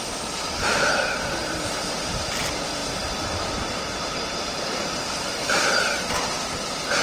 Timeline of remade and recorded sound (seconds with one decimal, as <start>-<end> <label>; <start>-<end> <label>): 0.0-7.0 recorded